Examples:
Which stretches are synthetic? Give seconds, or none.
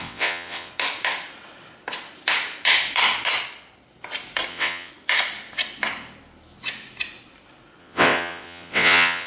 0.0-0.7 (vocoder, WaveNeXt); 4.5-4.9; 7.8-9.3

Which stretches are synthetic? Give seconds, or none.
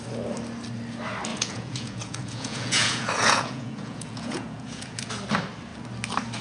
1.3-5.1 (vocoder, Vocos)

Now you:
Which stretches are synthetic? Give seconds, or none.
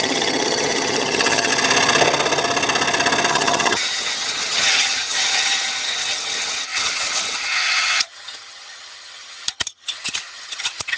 0.0-1.5 (vocoder, HiFi-GAN); 3.3-11.0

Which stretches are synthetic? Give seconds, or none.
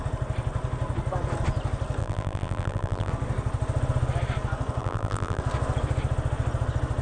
2.0-3.1 (vocoder, BigVGAN v2); 4.8-5.4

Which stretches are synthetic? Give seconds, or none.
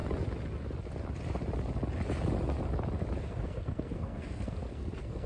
3.2-5.3 (codec, SNAC)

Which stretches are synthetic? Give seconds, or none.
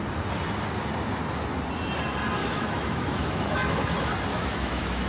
2.4-3.8 (autoencoder, DAC-VAE); 4.3-5.1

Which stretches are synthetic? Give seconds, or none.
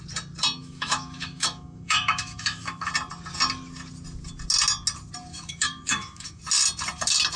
0.6-2.9 (autoencoder, DAC-VAE); 5.3-6.4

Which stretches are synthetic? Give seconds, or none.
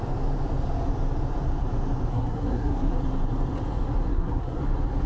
2.1-3.0 (codec, SNAC); 4.1-4.6